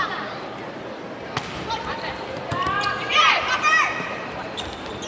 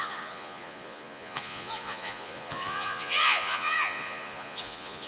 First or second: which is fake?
second